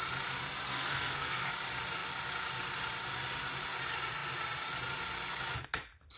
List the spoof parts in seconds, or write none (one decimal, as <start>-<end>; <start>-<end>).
0.7-1.5